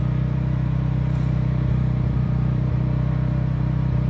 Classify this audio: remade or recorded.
remade